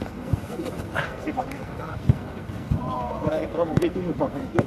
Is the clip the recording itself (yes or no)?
no